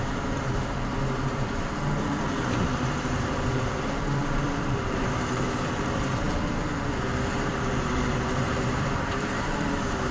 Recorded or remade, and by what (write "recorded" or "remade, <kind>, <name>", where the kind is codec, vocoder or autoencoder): remade, vocoder, BigVGAN v2